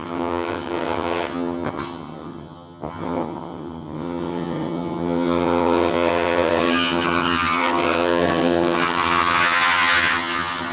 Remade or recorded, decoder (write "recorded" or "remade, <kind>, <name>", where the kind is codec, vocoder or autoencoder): remade, vocoder, HiFi-GAN